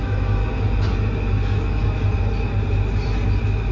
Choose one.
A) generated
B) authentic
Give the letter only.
B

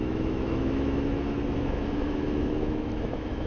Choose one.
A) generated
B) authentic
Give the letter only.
A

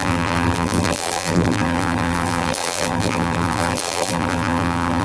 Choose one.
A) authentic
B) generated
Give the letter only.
B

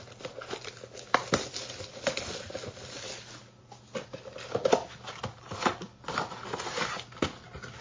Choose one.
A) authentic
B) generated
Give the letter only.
A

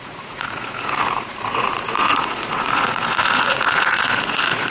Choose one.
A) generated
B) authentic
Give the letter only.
A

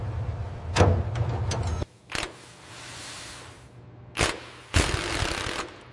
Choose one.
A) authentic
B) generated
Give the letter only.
A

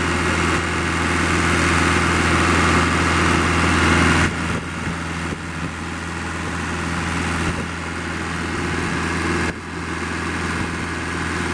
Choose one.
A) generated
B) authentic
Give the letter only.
B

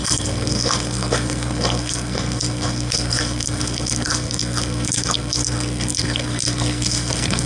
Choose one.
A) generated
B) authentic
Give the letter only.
A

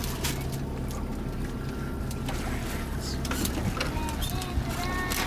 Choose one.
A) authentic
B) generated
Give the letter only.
A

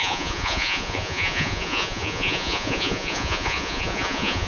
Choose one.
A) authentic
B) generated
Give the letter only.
B